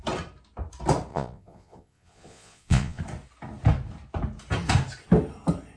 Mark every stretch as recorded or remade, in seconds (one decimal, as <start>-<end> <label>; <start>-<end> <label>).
0.0-1.1 recorded; 1.1-3.0 remade; 3.0-5.8 recorded